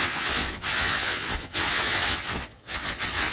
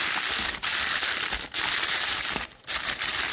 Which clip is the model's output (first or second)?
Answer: first